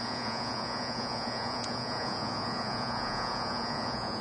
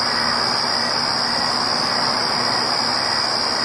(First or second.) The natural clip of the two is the second